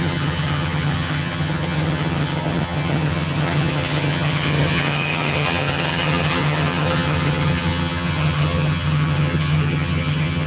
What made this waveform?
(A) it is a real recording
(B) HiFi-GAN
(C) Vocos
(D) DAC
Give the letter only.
B